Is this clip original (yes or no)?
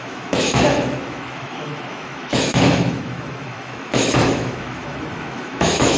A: no